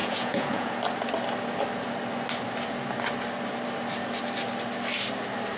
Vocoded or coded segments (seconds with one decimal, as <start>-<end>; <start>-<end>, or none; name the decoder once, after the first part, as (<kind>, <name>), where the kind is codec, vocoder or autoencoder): 0.0-0.7 (vocoder, Vocos)